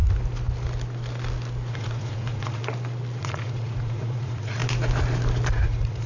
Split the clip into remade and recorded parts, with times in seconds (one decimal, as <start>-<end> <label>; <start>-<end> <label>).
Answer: 0.0-1.7 recorded; 1.7-2.6 remade; 2.6-3.2 recorded; 3.2-4.6 remade; 4.6-5.5 recorded; 5.5-6.1 remade

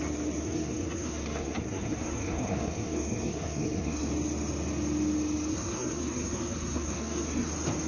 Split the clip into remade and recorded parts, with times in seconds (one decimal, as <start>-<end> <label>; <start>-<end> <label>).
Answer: 0.0-0.4 recorded; 0.4-4.1 remade; 4.1-5.5 recorded; 5.5-7.5 remade; 7.5-7.9 recorded

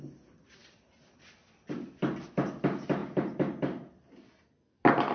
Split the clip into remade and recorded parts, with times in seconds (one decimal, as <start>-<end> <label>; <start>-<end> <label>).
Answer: 0.0-5.1 recorded

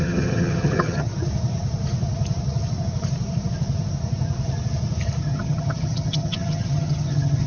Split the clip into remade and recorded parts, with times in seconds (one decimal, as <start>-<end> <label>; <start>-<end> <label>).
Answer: 0.0-1.1 remade; 1.1-5.2 recorded; 5.2-7.5 remade

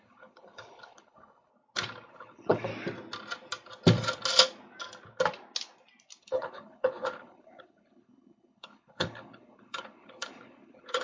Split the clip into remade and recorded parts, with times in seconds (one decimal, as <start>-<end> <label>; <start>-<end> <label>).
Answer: 0.0-1.5 remade; 1.5-2.1 recorded; 2.1-2.7 remade; 2.7-6.2 recorded; 6.2-11.0 remade

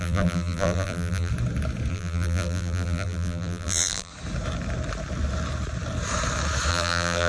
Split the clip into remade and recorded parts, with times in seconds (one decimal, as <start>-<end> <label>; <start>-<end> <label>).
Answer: 0.0-1.3 remade; 1.3-1.9 recorded; 1.9-4.1 remade; 4.1-6.7 recorded; 6.7-7.3 remade

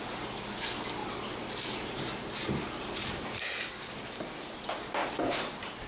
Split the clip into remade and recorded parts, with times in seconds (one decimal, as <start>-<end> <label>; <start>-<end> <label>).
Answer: 0.0-1.0 recorded; 1.0-3.7 remade; 3.7-5.9 recorded